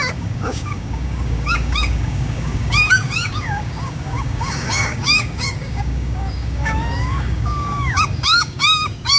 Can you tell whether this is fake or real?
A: fake